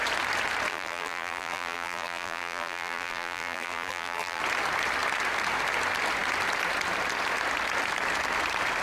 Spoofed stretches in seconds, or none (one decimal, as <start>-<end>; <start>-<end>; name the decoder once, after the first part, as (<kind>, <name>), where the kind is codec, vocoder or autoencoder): 0.7-4.4 (vocoder, BigVGAN v2)

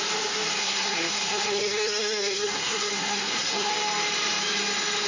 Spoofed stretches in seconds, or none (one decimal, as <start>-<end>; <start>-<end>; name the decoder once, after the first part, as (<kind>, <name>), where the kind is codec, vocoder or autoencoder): 0.6-3.7 (codec, SNAC)